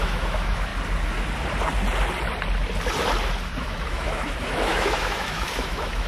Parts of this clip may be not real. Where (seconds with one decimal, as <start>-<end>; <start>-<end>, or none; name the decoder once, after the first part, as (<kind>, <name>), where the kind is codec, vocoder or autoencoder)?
0.0-0.7 (autoencoder, DAC-VAE); 3.6-6.1